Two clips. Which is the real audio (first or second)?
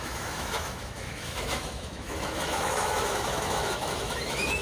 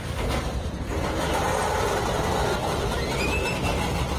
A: second